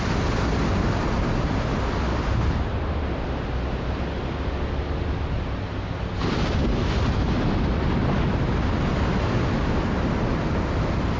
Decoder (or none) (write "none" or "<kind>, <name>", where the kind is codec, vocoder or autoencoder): none